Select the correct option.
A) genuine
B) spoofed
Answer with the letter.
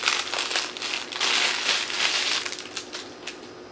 A